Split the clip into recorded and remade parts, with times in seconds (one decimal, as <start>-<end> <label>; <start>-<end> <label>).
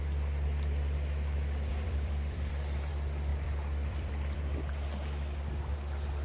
0.0-1.7 recorded; 1.7-2.9 remade; 2.9-3.3 recorded; 3.3-4.4 remade; 4.4-6.2 recorded